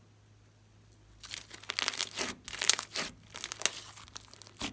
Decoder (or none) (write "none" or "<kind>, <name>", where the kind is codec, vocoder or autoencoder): none